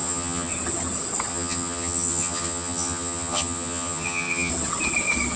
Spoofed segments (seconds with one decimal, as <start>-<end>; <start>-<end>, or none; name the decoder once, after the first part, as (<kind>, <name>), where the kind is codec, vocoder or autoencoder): 0.0-0.5 (vocoder, HiFi-GAN); 1.3-4.5